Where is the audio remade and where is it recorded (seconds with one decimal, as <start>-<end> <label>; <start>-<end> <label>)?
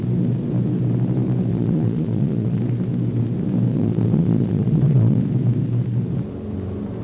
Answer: 0.0-1.5 recorded; 1.5-2.6 remade; 2.6-3.7 recorded; 3.7-5.2 remade; 5.2-7.0 recorded